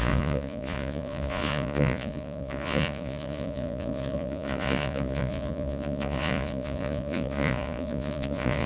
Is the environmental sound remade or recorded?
remade